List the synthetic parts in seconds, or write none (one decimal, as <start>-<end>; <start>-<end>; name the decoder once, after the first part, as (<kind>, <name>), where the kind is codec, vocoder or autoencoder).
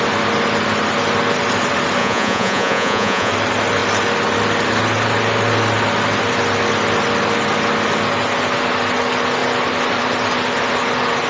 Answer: 2.0-3.3 (vocoder, Vocos)